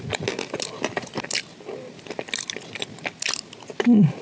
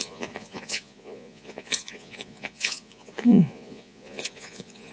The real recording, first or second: first